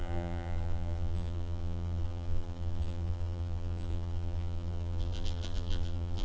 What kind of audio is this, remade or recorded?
remade